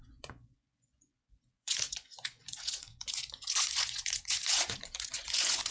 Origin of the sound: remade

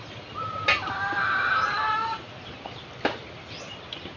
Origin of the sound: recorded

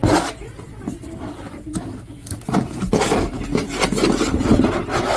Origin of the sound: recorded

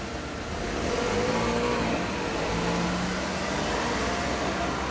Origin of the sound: recorded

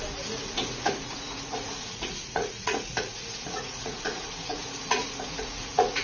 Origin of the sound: remade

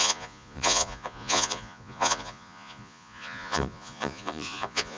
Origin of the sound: remade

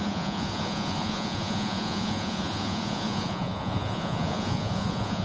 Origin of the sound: remade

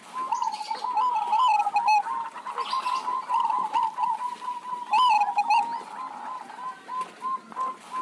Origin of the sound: recorded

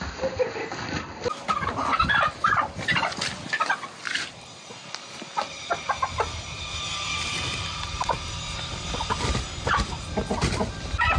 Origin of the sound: recorded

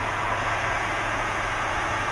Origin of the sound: remade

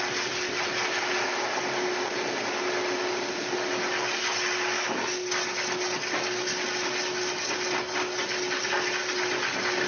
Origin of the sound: recorded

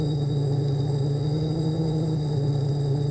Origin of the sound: recorded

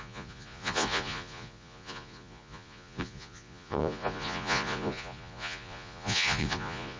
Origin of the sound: remade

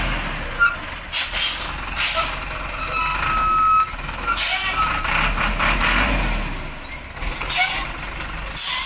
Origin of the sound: recorded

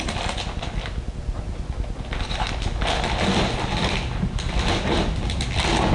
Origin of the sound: recorded